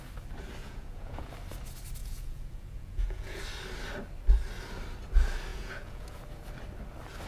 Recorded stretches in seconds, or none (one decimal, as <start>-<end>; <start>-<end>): 0.0-0.6; 1.3-2.0; 3.4-5.5; 6.2-7.3